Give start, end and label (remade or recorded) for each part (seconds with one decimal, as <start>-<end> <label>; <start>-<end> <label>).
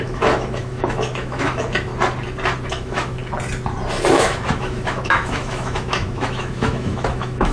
0.0-1.9 remade; 1.9-2.7 recorded; 2.7-3.2 remade; 3.2-4.1 recorded; 4.1-7.5 remade